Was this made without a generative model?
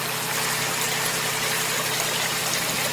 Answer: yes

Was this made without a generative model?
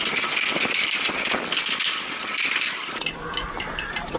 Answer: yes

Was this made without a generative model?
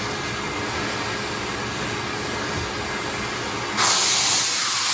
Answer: yes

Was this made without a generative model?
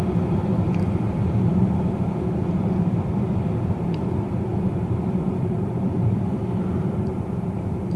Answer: no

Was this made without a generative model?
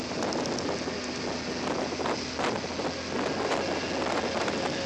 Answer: yes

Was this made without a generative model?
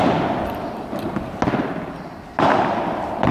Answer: yes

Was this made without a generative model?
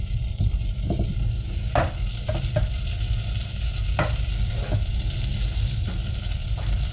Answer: yes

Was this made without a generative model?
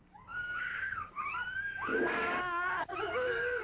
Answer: no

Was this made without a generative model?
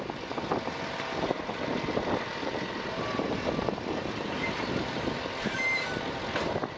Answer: no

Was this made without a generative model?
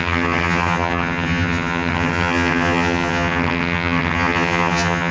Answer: no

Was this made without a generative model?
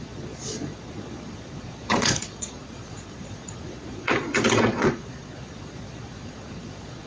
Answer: no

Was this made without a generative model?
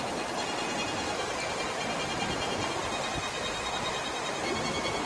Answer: yes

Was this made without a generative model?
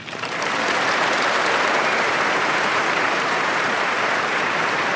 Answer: no